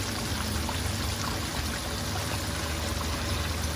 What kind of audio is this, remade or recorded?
recorded